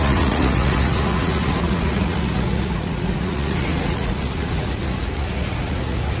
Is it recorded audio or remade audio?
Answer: remade